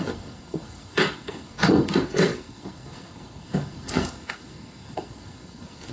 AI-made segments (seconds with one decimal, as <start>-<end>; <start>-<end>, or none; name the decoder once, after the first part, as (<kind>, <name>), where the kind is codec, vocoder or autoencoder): 0.0-5.9 (codec, SNAC)